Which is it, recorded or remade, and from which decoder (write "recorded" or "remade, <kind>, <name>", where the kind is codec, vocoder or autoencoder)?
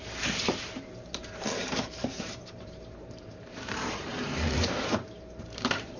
remade, vocoder, BigVGAN v2